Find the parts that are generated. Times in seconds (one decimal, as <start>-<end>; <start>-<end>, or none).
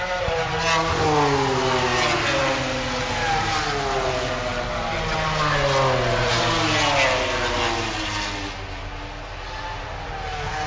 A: none